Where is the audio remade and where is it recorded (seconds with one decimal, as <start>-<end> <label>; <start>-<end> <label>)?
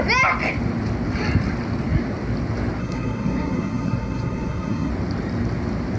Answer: 0.0-2.8 recorded; 2.8-4.9 remade; 4.9-6.0 recorded